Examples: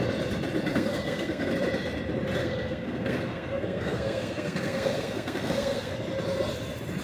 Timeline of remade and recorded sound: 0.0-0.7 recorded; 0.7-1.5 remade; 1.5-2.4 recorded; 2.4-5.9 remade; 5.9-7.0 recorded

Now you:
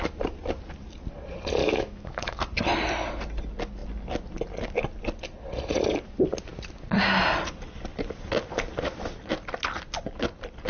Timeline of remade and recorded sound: 0.0-1.6 recorded; 1.6-2.4 remade; 2.4-10.7 recorded

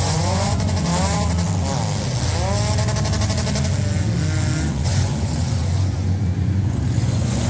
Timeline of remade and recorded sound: 0.0-0.9 remade; 0.9-4.7 recorded; 4.7-7.5 remade

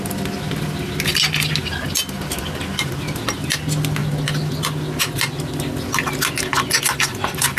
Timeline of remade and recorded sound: 0.0-7.6 recorded

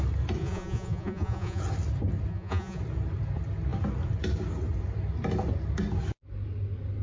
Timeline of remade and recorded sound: 0.0-0.4 recorded; 0.4-1.6 remade; 1.6-2.3 recorded; 2.3-2.8 remade; 2.8-7.0 recorded